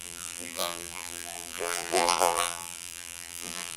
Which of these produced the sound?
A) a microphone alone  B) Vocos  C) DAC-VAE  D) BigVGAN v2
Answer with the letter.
D